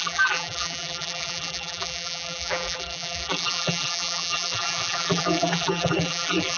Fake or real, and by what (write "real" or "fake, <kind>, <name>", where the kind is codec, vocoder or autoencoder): fake, vocoder, BigVGAN v2